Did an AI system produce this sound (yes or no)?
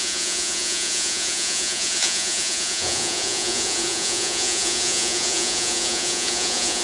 yes